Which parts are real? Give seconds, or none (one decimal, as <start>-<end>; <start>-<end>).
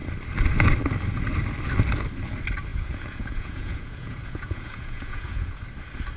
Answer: 0.0-2.7; 5.6-6.2